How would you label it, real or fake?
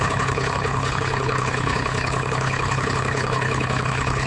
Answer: fake